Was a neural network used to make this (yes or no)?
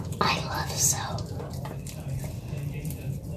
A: yes